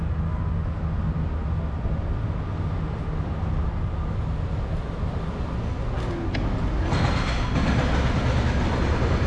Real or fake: real